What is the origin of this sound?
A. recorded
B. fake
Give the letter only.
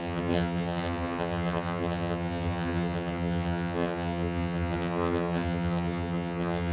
B